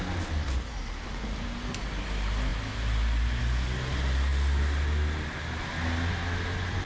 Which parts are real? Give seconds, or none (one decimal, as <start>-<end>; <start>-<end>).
0.0-6.9